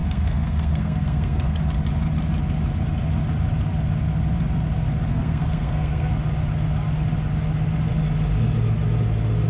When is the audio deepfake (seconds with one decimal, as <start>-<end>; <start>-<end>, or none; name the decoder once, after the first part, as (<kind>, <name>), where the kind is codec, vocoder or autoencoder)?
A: 0.0-1.6 (codec, SNAC); 5.1-6.1